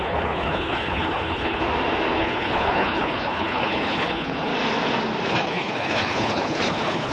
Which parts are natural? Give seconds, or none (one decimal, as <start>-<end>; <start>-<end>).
1.6-2.2; 4.5-5.3